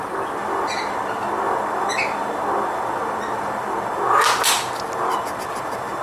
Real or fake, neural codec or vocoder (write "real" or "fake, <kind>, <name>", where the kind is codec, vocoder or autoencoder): real